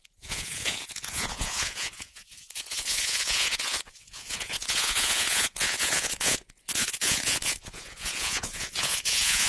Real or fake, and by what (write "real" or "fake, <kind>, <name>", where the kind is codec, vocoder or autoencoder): fake, vocoder, Vocos